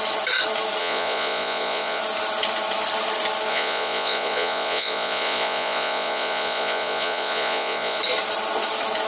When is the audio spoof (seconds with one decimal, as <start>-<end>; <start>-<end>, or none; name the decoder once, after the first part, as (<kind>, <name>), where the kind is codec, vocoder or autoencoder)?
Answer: 0.8-2.0 (vocoder, Vocos); 3.5-8.0